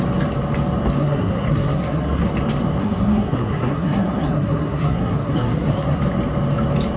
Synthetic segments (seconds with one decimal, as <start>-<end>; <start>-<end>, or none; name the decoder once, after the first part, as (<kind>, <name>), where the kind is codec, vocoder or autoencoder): 1.0-2.3 (codec, SNAC); 2.8-6.0